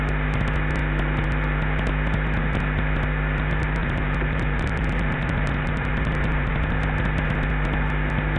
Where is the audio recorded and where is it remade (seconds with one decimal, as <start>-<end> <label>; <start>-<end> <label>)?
0.0-3.8 recorded; 3.8-6.5 remade; 6.5-8.4 recorded